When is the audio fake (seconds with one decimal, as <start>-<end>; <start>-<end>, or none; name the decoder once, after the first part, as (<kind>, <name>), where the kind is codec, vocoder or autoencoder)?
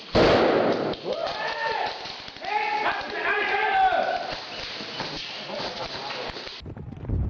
1.2-5.6 (vocoder, BigVGAN v2); 6.5-7.3